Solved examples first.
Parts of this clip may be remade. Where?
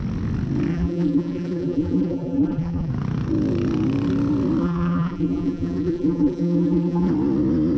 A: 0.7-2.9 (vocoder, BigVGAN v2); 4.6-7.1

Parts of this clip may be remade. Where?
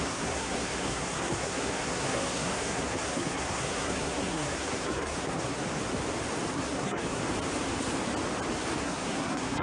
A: 0.0-5.6 (codec, SNAC); 6.5-7.2; 8.8-9.6